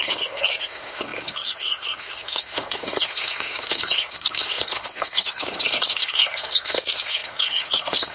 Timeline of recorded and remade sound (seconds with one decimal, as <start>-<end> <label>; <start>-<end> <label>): 0.0-8.1 remade